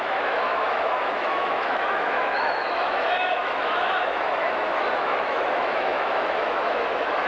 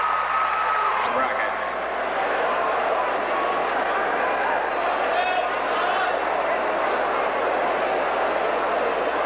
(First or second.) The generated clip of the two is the first